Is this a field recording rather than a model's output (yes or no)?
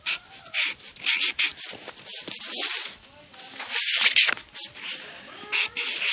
yes